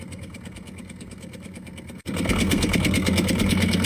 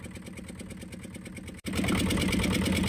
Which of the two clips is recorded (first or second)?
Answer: second